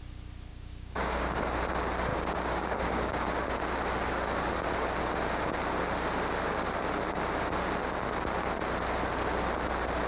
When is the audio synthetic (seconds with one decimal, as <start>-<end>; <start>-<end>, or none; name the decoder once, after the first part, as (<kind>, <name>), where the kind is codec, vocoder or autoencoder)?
0.5-1.4 (codec, DAC); 2.1-3.6